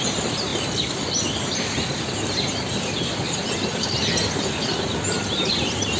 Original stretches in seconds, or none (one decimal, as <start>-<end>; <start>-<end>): 0.0-6.0